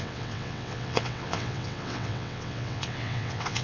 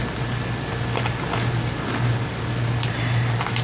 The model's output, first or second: first